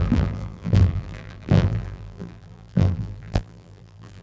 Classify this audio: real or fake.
fake